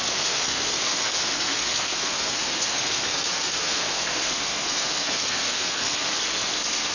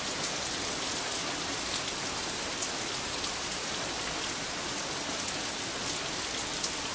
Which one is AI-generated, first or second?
first